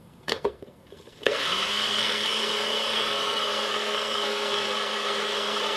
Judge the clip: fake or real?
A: fake